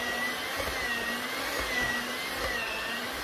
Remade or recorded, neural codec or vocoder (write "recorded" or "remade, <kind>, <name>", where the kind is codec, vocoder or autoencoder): recorded